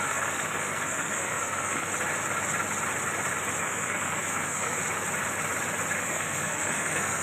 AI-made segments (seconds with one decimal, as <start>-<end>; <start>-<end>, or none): 0.0-1.9; 3.6-4.8; 6.0-7.2